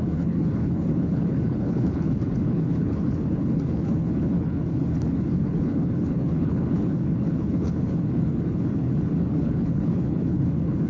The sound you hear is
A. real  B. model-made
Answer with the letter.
B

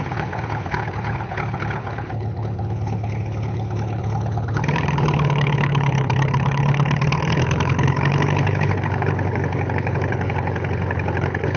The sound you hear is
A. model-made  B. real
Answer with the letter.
A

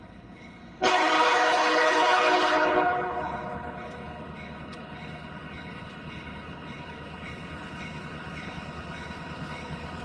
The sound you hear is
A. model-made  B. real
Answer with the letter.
A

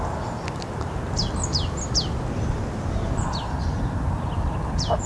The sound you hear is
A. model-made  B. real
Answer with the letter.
B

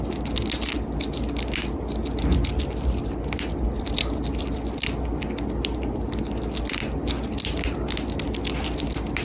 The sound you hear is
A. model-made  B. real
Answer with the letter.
B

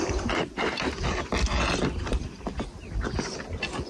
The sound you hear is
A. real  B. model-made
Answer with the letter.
A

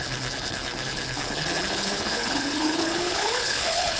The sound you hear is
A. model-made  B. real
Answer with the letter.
A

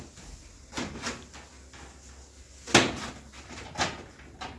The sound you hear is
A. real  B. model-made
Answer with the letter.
A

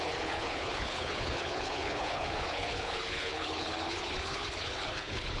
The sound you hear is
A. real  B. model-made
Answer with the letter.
B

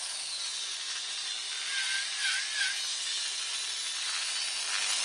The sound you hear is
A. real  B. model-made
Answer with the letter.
A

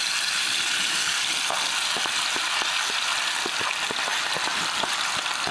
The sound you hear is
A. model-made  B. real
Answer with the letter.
B